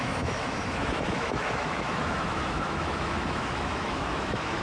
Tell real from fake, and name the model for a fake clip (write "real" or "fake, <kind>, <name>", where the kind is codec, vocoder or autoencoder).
fake, autoencoder, DAC-VAE